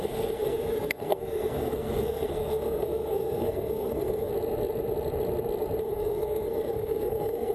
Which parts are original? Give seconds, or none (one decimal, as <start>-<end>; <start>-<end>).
4.3-5.8

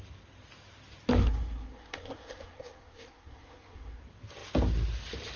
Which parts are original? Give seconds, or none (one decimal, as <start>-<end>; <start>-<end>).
0.0-1.2; 4.0-5.4

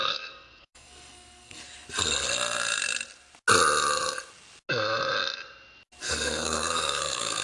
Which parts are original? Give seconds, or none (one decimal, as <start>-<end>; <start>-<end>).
1.6-6.0

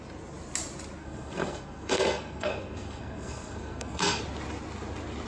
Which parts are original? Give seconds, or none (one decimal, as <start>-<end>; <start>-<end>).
0.0-1.0; 4.2-5.3

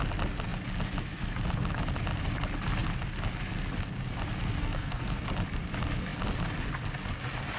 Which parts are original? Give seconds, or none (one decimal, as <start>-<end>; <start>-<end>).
0.0-4.6; 5.2-7.6

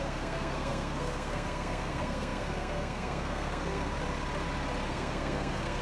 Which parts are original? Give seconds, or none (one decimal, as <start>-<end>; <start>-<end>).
3.9-4.9

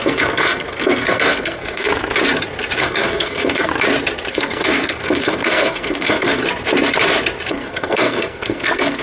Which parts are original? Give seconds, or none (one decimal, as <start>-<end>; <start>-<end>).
1.9-2.8; 3.7-4.3; 6.4-7.5

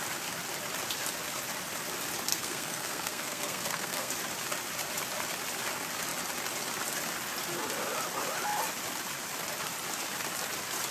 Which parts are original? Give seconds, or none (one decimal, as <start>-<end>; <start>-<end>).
0.0-2.3; 4.1-10.9